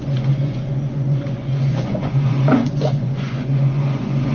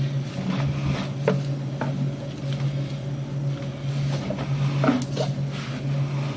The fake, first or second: first